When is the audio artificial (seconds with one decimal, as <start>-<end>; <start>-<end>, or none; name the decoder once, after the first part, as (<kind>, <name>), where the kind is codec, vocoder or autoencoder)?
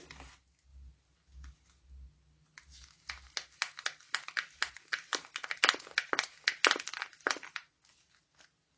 none